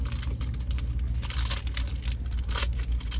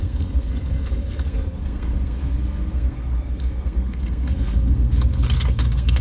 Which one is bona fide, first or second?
first